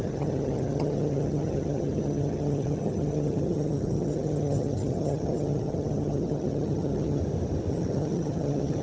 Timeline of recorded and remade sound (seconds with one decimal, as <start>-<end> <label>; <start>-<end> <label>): 0.0-7.2 remade; 7.2-7.7 recorded; 7.7-8.8 remade